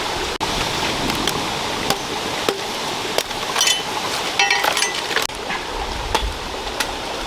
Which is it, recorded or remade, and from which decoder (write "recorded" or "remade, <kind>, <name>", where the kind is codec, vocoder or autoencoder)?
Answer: recorded